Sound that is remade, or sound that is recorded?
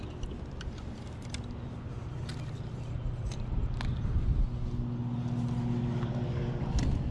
recorded